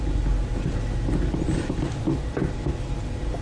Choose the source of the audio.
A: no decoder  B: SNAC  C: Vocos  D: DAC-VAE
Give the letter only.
A